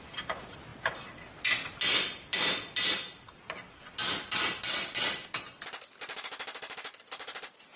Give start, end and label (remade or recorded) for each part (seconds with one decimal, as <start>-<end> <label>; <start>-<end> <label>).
0.0-7.8 recorded